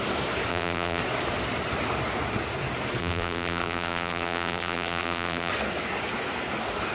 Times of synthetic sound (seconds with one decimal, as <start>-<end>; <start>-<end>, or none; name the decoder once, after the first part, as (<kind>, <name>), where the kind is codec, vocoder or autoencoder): 0.5-1.0 (vocoder, BigVGAN v2); 3.0-5.5